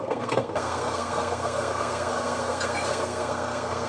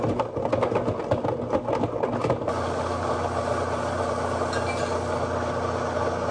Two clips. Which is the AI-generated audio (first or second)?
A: first